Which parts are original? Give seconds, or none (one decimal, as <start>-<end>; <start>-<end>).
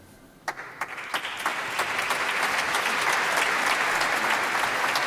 0.0-5.1